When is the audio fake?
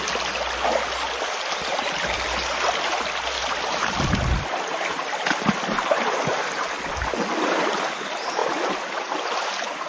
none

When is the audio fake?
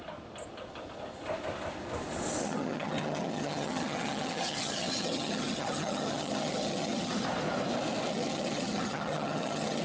2.4-7.1 (vocoder, HiFi-GAN); 8.1-9.8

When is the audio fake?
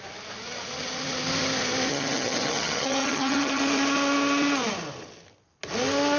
1.9-3.6 (vocoder, HiFi-GAN)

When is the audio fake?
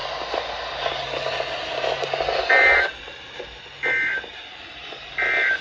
none